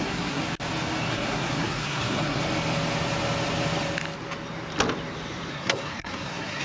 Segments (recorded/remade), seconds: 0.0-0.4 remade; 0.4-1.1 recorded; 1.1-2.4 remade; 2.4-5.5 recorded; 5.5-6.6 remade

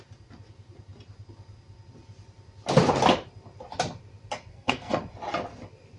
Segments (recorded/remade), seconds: 0.0-4.5 recorded; 4.5-5.0 remade; 5.0-6.0 recorded

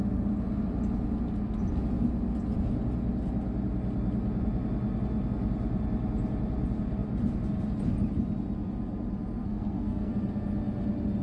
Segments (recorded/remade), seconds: 0.0-9.4 recorded; 9.4-10.1 remade; 10.1-11.2 recorded

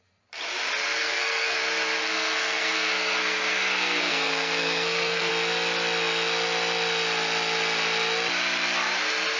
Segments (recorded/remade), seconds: 0.0-1.0 recorded; 1.0-1.6 remade; 1.6-2.0 recorded; 2.0-5.3 remade; 5.3-9.4 recorded

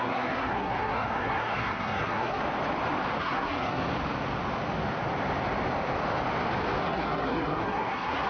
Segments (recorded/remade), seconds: 0.0-2.4 remade; 2.4-3.2 recorded; 3.2-3.8 remade; 3.8-6.8 recorded; 6.8-8.3 remade